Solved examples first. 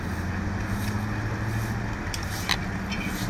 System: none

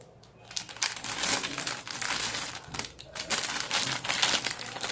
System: none